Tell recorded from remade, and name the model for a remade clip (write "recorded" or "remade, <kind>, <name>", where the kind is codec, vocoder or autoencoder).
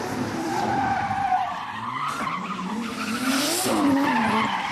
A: remade, vocoder, BigVGAN v2